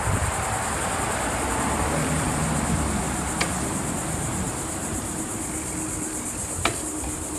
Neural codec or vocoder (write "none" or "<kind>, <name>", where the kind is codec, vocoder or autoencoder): none